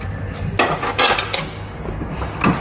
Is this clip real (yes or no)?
yes